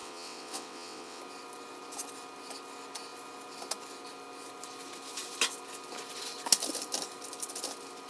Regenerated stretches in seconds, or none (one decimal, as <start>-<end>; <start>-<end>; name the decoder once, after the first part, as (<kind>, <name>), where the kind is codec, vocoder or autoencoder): 0.0-1.2 (vocoder, WaveNeXt)